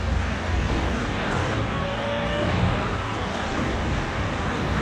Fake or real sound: fake